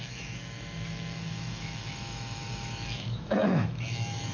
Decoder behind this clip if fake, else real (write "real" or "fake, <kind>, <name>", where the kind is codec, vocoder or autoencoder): fake, autoencoder, DAC-VAE